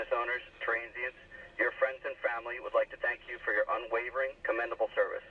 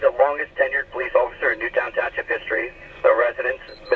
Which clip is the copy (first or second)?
second